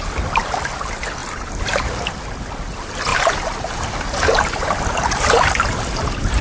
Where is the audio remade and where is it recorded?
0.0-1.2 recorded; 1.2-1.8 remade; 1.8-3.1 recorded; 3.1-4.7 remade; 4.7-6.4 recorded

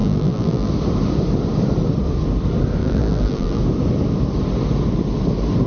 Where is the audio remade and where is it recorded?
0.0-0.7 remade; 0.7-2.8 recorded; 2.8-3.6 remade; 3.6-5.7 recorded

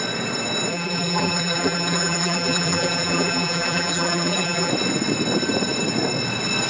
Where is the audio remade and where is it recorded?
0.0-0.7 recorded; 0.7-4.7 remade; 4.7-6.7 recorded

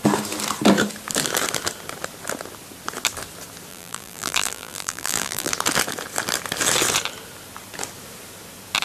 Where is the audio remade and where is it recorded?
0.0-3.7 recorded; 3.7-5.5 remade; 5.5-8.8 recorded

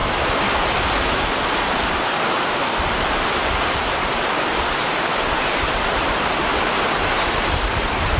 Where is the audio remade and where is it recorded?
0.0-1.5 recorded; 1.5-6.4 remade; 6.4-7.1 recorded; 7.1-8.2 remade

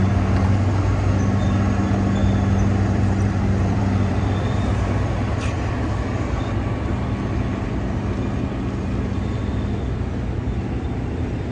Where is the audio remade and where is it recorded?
0.0-2.2 recorded; 2.2-6.4 remade; 6.4-11.5 recorded

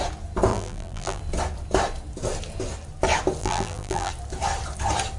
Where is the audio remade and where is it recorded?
0.0-0.5 recorded; 0.5-1.2 remade; 1.2-3.4 recorded; 3.4-4.1 remade; 4.1-5.2 recorded